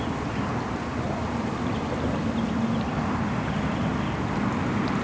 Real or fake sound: real